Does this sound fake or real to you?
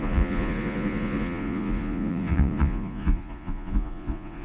fake